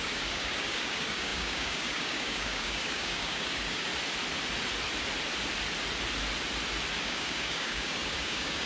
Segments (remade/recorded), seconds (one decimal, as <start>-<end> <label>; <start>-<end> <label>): 0.0-3.9 remade; 3.9-7.0 recorded; 7.0-8.7 remade